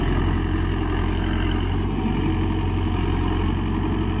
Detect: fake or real real